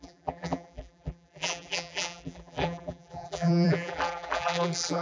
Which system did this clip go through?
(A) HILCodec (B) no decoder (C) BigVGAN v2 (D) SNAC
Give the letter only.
C